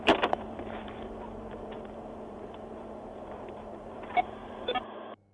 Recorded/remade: remade